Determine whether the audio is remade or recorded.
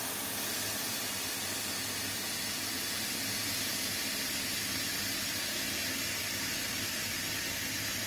recorded